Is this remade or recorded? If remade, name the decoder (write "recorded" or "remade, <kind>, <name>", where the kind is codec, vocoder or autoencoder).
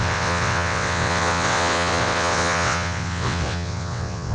remade, vocoder, WaveNeXt